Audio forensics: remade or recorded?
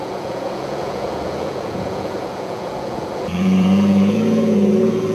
remade